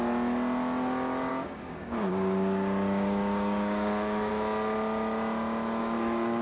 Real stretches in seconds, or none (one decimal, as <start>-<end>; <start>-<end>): 0.0-1.3; 4.3-5.8